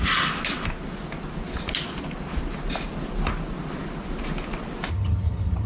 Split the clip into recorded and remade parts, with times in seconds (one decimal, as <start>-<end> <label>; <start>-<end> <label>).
0.0-4.9 recorded; 4.9-5.7 remade